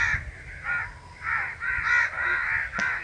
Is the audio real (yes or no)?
yes